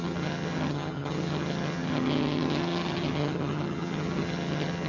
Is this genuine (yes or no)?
no